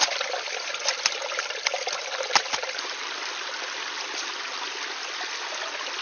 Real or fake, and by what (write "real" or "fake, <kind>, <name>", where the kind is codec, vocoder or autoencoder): real